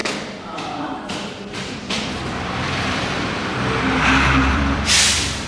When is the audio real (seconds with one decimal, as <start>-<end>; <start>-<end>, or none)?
0.0-0.6; 3.5-4.5